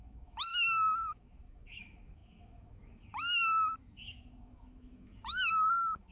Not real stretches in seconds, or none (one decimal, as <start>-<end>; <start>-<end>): 0.0-6.1